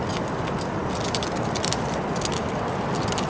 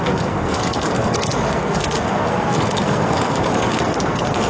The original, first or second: first